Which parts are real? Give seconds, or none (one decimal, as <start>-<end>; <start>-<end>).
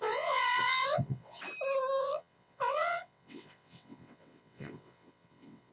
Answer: 1.4-2.0